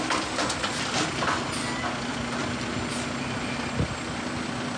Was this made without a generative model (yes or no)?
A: yes